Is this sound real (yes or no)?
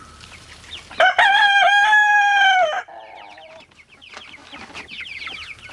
yes